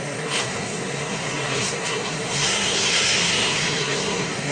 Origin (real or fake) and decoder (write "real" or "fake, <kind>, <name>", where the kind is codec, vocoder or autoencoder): fake, codec, SNAC